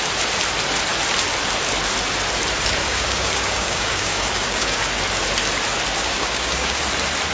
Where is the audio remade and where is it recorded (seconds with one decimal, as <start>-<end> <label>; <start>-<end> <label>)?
0.0-2.8 recorded; 2.8-4.8 remade; 4.8-6.0 recorded; 6.0-6.8 remade; 6.8-7.3 recorded